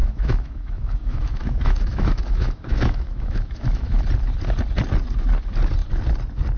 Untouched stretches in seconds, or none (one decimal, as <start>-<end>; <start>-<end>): 4.0-6.6